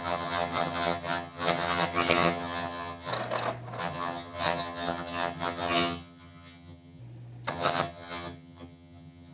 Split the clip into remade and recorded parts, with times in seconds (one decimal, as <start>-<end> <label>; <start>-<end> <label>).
0.0-3.1 remade; 3.1-3.8 recorded; 3.8-7.0 remade; 7.0-7.5 recorded; 7.5-9.3 remade